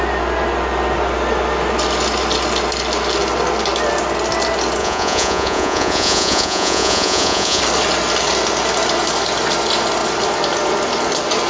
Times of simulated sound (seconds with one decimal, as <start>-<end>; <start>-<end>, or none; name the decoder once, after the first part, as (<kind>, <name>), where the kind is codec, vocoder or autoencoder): 4.8-7.6 (vocoder, Vocos)